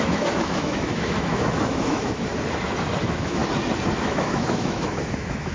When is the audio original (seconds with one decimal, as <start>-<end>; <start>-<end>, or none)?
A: 2.3-3.0; 3.4-4.0